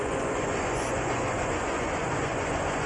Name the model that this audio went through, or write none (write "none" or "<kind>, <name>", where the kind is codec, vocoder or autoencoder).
vocoder, Vocos